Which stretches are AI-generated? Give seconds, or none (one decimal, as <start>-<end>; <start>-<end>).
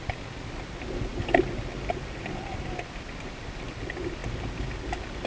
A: none